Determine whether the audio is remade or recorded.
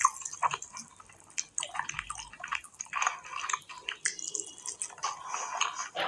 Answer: recorded